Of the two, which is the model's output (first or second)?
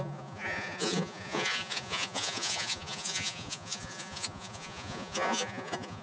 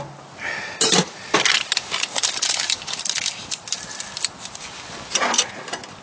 first